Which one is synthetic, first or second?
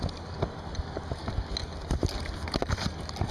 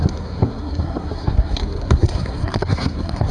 second